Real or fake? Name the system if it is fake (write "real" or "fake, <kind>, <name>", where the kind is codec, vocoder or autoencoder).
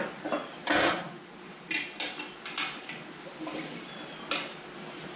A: real